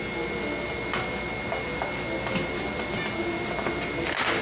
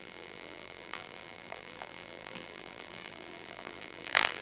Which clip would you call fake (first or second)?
second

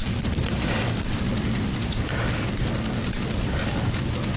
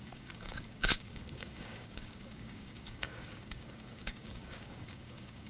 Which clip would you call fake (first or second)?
second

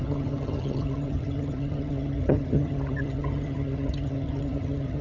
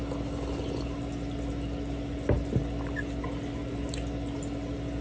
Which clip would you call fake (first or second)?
first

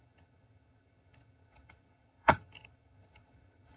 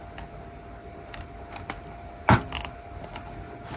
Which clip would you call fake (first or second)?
first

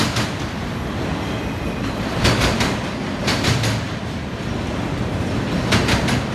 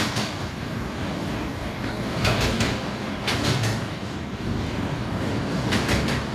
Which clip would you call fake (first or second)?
second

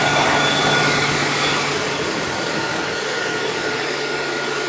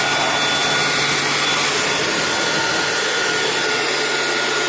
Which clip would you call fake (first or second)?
first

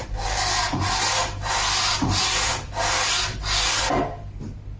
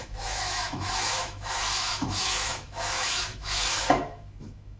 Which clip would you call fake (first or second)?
second